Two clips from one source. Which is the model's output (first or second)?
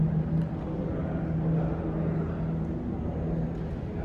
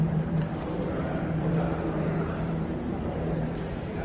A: second